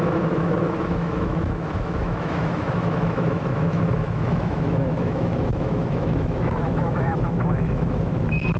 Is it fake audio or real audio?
fake